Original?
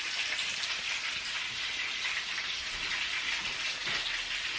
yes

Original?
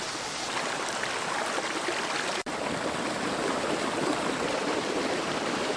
yes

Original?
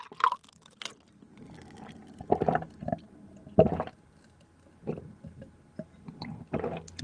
yes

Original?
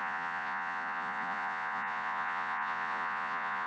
no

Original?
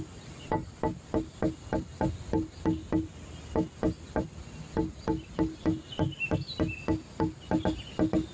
yes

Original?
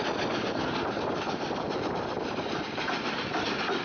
yes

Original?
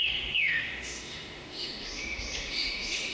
no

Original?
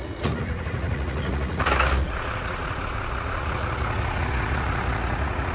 no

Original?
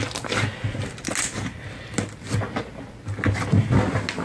yes